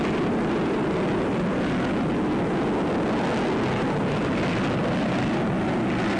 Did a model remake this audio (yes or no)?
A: no